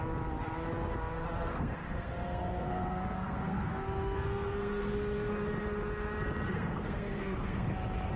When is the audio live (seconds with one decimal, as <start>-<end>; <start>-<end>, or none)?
0.0-1.5; 5.3-6.5; 7.7-8.2